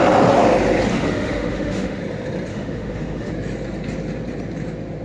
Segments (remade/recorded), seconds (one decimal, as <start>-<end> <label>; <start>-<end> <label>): 0.0-0.9 recorded; 0.9-2.0 remade; 2.0-2.5 recorded; 2.5-3.3 remade; 3.3-5.0 recorded